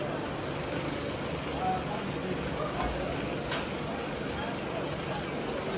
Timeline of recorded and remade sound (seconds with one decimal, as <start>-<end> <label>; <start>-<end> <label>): 0.0-5.8 recorded